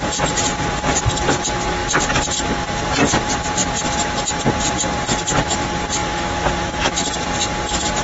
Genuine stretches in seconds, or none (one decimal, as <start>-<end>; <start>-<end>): 0.0-8.0